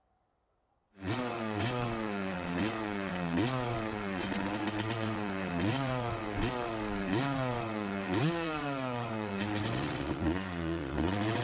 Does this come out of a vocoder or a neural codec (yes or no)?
yes